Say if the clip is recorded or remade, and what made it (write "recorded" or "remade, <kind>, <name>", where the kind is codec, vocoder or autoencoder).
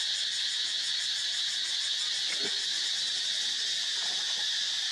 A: recorded